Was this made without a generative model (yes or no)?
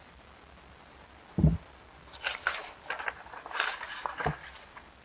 yes